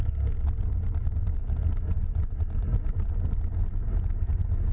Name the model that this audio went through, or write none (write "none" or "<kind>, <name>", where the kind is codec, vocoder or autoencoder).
none